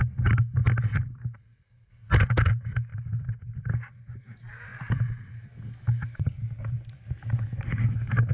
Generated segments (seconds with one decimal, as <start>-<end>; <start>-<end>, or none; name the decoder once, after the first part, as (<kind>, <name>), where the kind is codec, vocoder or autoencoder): none